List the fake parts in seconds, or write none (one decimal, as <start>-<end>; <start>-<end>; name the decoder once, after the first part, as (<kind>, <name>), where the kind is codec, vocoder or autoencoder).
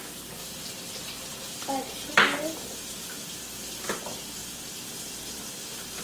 0.4-4.0 (vocoder, BigVGAN v2)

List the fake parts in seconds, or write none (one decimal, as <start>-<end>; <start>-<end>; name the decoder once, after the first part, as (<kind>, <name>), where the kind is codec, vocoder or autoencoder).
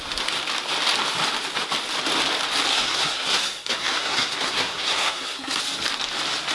2.7-5.6 (codec, SNAC)